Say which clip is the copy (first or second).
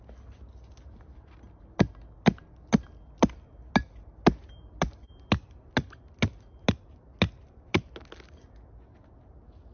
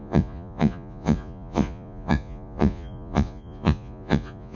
second